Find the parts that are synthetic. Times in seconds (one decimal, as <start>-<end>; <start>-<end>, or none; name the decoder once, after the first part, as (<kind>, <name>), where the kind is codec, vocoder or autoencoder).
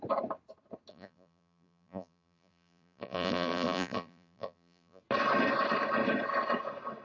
0.9-5.0 (vocoder, BigVGAN v2)